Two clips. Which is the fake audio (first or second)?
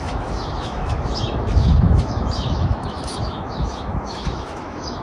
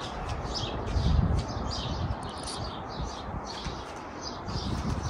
first